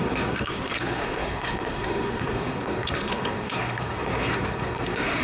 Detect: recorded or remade remade